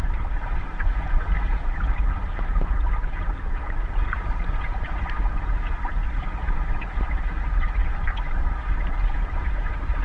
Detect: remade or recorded remade